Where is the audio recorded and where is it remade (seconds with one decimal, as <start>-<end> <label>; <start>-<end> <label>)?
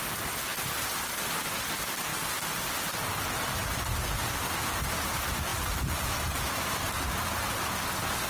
0.0-2.1 recorded; 2.1-3.5 remade; 3.5-5.5 recorded; 5.5-7.7 remade; 7.7-8.3 recorded